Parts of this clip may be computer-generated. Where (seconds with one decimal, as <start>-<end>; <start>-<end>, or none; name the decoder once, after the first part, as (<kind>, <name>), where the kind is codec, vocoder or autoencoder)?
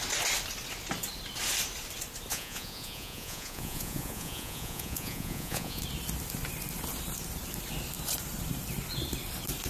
2.3-5.8 (vocoder, Vocos)